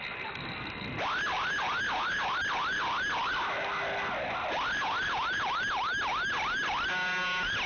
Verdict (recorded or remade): recorded